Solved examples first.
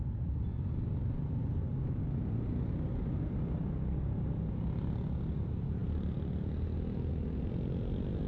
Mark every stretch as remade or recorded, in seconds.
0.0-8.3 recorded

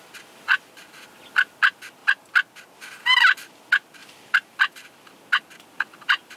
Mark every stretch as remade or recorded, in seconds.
0.0-6.4 recorded